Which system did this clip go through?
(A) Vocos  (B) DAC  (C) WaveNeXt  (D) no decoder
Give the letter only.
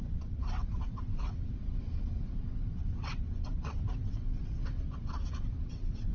C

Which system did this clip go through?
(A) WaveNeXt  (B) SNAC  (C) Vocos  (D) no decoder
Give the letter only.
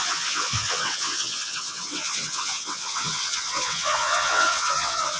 A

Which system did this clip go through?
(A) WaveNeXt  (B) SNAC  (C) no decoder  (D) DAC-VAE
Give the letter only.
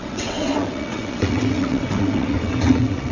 A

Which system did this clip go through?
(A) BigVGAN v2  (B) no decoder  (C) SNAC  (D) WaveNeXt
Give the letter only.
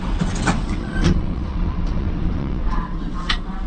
D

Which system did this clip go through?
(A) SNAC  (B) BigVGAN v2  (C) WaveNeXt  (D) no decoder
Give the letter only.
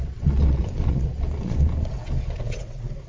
C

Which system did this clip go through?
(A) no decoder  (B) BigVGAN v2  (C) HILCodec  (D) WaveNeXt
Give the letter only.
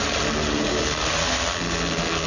A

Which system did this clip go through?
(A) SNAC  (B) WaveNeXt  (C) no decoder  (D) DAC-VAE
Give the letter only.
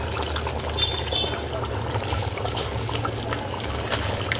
C